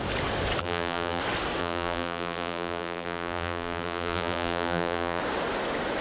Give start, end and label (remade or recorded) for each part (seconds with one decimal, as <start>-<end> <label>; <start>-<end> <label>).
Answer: 0.0-0.6 recorded; 0.6-1.2 remade; 1.2-1.6 recorded; 1.6-5.2 remade; 5.2-6.0 recorded